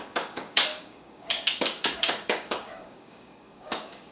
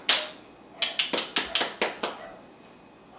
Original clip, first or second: second